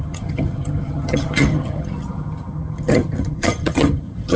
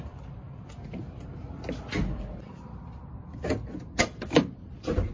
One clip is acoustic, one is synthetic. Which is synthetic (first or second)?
first